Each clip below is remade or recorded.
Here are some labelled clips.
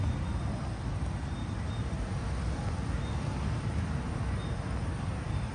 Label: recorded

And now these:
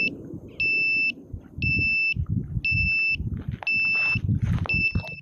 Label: recorded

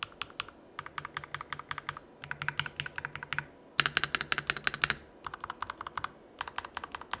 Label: recorded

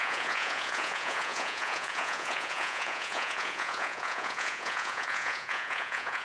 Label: remade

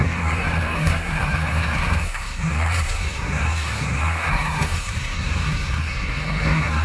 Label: remade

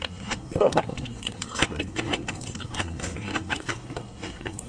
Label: remade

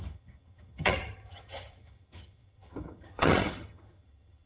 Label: remade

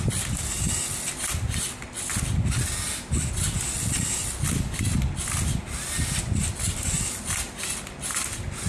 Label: recorded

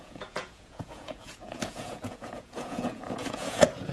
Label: remade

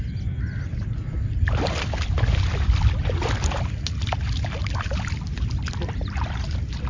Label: remade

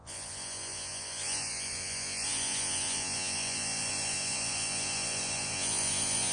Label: remade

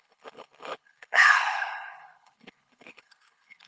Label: remade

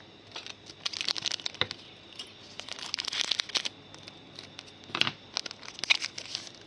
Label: recorded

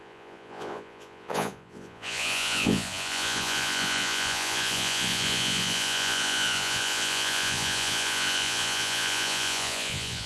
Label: remade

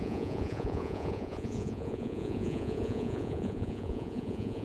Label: remade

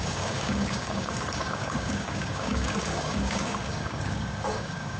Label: remade